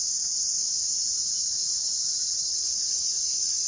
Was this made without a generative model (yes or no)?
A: yes